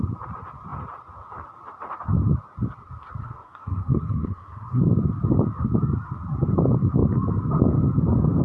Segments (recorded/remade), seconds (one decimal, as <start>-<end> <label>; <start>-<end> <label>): 0.0-3.2 recorded; 3.2-4.8 remade; 4.8-8.4 recorded